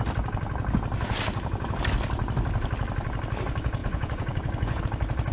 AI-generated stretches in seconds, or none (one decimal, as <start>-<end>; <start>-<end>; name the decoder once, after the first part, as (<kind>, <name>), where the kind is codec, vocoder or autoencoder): 3.8-4.8 (vocoder, Vocos)